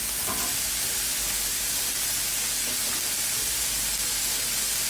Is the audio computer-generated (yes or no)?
no